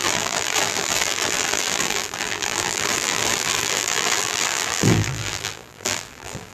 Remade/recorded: remade